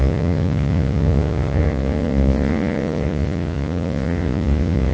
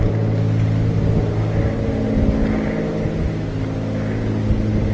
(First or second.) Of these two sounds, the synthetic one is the first